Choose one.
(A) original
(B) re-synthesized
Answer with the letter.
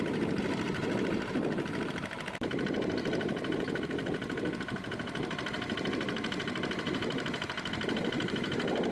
B